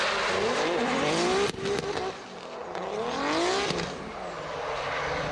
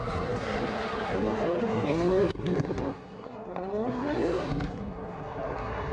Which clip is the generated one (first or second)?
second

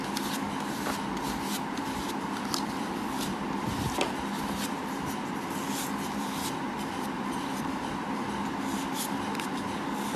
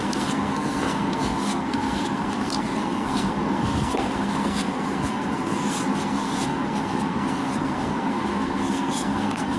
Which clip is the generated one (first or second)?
second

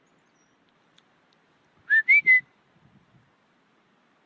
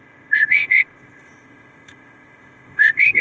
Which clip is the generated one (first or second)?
second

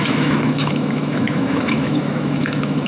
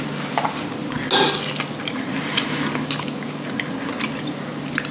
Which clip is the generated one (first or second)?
first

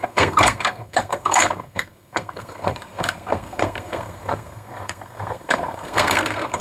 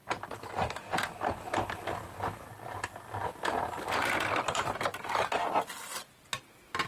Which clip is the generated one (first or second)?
first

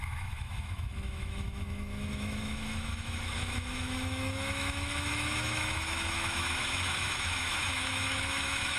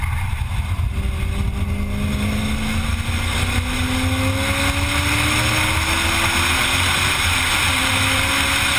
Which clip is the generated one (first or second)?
first